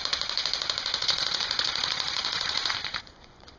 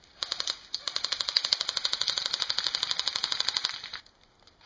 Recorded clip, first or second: second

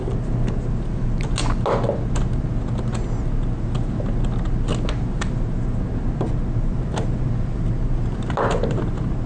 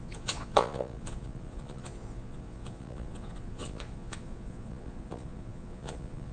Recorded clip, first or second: first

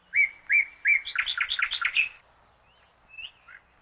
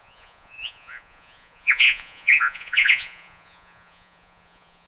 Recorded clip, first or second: first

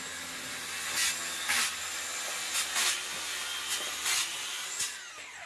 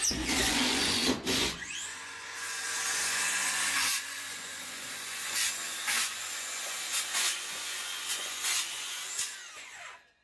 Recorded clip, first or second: first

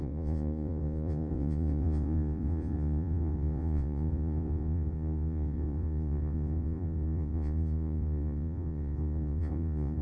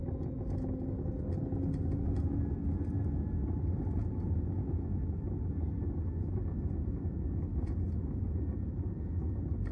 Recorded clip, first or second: second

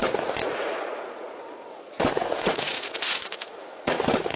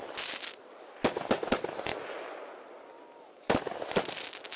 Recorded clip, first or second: second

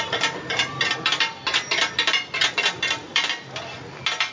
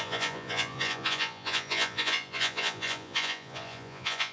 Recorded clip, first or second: first